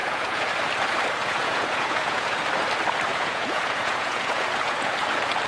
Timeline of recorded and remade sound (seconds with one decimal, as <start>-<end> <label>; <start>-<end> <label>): 0.0-0.5 remade; 0.5-1.2 recorded; 1.2-2.4 remade; 2.4-3.1 recorded; 3.1-4.9 remade; 4.9-5.5 recorded